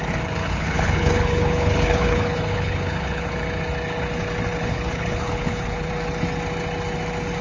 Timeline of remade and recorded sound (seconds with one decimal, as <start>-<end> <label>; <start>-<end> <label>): 0.0-0.4 recorded; 0.4-3.3 remade; 3.3-4.6 recorded; 4.6-5.9 remade; 5.9-7.4 recorded

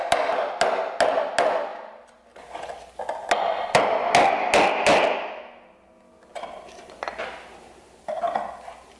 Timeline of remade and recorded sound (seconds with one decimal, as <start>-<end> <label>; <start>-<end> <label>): 0.0-9.0 recorded

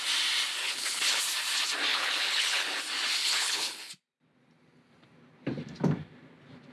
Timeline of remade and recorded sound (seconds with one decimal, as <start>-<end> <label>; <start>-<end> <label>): 0.0-0.6 recorded; 0.6-1.2 remade; 1.2-1.9 recorded; 1.9-2.8 remade; 2.8-3.2 recorded; 3.2-3.9 remade; 3.9-6.7 recorded

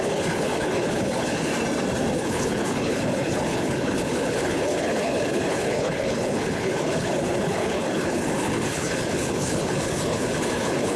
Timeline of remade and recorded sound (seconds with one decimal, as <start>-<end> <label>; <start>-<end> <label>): 0.0-1.5 remade; 1.5-2.2 recorded; 2.2-11.0 remade

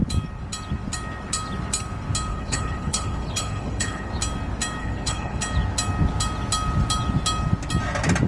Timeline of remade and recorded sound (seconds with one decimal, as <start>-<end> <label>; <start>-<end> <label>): 0.0-2.3 recorded; 2.3-4.1 remade; 4.1-4.8 recorded; 4.8-5.4 remade; 5.4-8.3 recorded

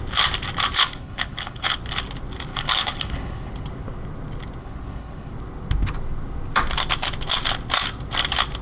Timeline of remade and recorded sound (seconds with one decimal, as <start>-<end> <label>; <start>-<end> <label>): 0.0-0.8 recorded; 0.8-1.8 remade; 1.8-2.5 recorded; 2.5-3.5 remade; 3.5-4.6 recorded; 4.6-5.3 remade; 5.3-8.6 recorded